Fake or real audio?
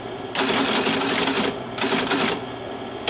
fake